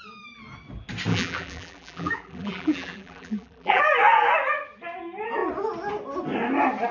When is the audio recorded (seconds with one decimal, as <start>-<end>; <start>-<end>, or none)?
0.0-1.1; 3.8-6.9